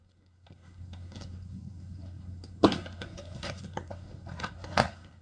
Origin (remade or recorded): remade